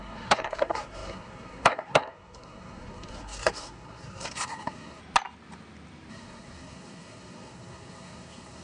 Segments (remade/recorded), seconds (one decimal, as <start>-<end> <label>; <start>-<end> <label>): 0.0-5.0 remade; 5.0-6.1 recorded; 6.1-8.6 remade